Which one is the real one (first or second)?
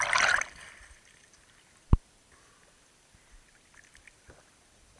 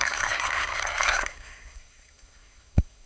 first